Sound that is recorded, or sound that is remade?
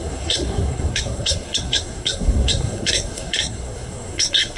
remade